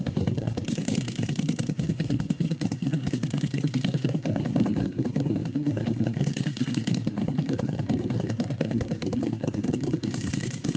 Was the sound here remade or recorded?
remade